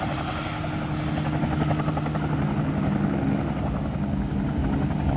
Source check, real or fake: real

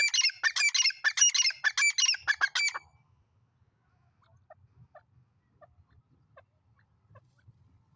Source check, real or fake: real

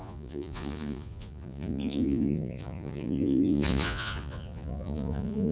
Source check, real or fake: fake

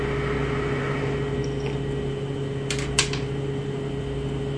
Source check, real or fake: real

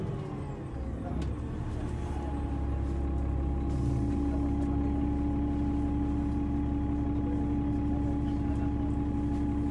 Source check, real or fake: real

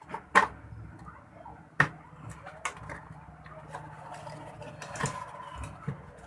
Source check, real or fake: real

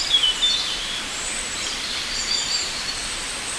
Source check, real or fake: fake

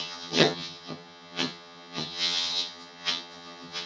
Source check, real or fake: fake